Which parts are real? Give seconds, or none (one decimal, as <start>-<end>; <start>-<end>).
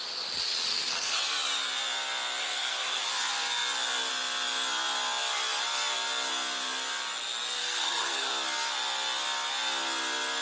0.0-0.7; 1.2-2.4; 3.0-7.6; 8.3-10.4